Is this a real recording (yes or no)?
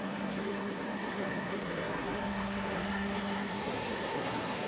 no